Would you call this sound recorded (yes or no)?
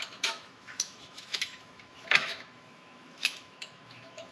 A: no